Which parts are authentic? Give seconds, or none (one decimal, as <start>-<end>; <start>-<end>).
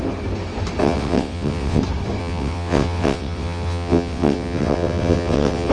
0.0-0.8; 1.8-2.2